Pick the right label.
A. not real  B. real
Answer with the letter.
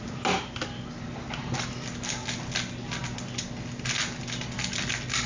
B